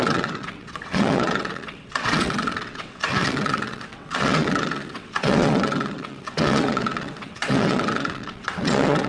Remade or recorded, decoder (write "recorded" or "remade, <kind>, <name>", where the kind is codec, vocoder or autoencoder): remade, vocoder, WaveNeXt